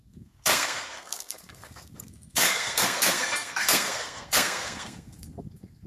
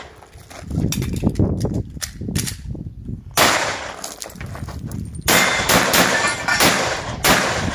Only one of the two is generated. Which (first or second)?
first